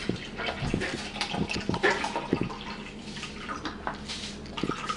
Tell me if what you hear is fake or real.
real